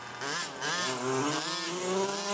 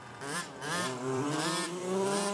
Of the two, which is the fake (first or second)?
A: second